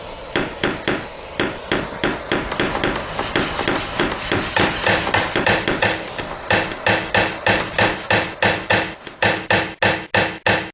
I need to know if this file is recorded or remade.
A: recorded